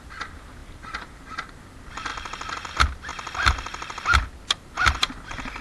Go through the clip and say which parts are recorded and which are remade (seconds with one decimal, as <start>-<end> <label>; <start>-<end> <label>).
0.0-5.6 recorded